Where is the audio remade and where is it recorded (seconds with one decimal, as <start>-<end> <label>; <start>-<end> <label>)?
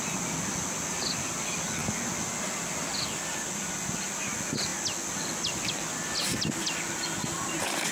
0.0-7.9 recorded